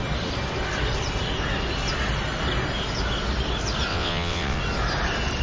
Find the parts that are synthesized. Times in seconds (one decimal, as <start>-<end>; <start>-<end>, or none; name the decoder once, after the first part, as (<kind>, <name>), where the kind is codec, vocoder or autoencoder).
3.9-4.6 (vocoder, WaveNeXt)